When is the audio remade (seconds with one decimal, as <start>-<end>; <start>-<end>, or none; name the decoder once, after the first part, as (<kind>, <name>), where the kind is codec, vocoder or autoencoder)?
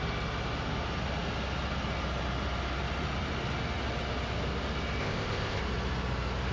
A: 5.0-5.6 (codec, ZipCodec)